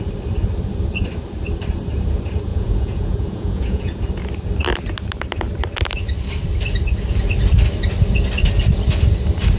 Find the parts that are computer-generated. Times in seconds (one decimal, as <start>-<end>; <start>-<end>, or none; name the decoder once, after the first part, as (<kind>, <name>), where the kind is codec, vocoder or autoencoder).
2.5-4.0 (vocoder, Vocos)